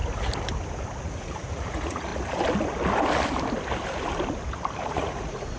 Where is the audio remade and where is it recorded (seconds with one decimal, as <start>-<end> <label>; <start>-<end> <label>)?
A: 0.0-1.1 recorded; 1.1-2.1 remade; 2.1-4.9 recorded; 4.9-5.6 remade